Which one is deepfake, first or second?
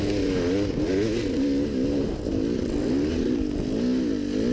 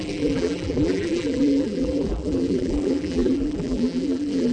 second